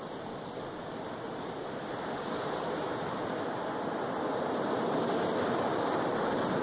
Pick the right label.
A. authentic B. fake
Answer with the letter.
A